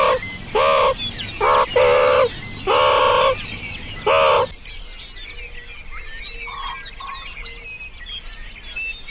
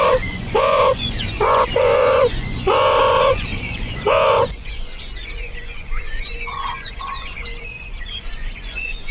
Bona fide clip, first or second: first